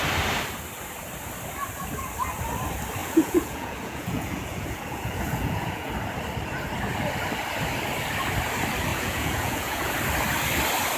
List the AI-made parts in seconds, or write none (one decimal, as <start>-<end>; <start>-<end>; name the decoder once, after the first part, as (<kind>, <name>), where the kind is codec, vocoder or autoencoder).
3.0-5.9 (vocoder, Vocos); 8.9-9.9